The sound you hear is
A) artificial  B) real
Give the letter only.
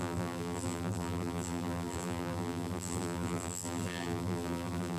A